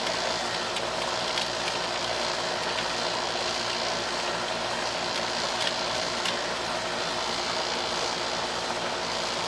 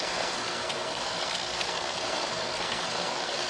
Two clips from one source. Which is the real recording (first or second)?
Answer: first